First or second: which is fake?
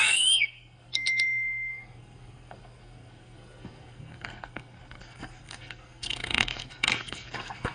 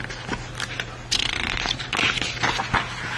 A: first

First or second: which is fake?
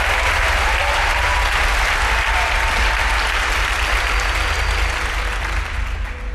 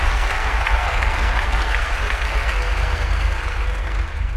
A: second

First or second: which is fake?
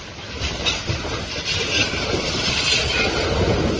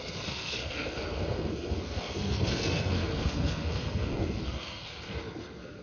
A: second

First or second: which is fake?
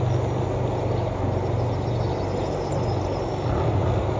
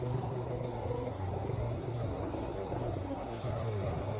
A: second